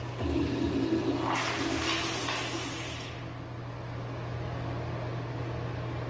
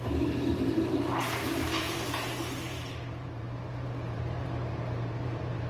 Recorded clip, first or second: first